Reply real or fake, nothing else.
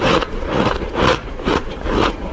fake